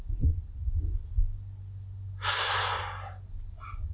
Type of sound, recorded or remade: recorded